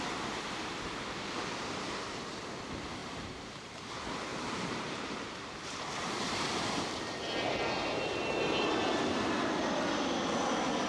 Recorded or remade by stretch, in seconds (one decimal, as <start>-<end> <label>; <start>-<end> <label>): 0.0-3.0 recorded; 3.0-3.9 remade; 3.9-4.3 recorded; 4.3-7.0 remade; 7.0-10.9 recorded